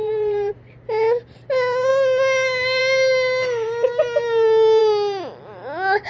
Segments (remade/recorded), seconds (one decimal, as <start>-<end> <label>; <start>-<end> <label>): 0.0-0.5 remade; 0.5-6.1 recorded